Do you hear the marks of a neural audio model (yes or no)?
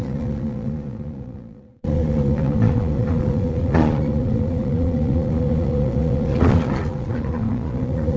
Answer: yes